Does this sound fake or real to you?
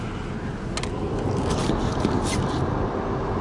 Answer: real